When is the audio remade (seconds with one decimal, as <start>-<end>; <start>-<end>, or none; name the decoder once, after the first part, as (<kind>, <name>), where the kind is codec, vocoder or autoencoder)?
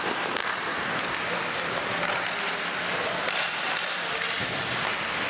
none